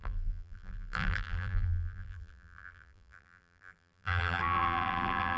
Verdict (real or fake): fake